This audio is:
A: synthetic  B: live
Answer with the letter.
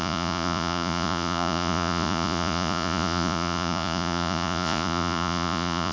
A